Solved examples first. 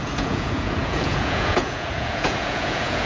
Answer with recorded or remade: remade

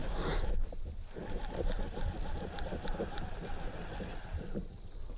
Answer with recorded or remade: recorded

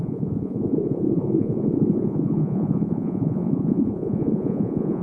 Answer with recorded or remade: remade